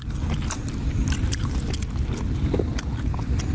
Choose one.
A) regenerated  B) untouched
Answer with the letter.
B